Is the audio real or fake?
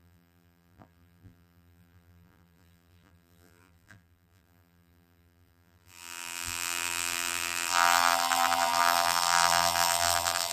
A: fake